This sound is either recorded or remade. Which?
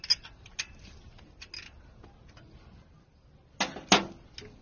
recorded